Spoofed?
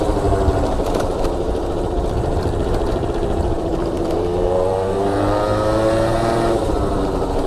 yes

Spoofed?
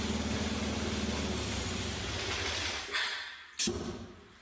no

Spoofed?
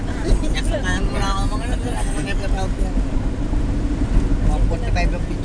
no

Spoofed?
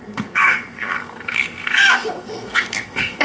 yes